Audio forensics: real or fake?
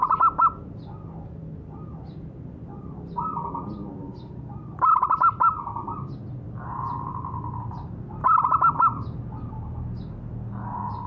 real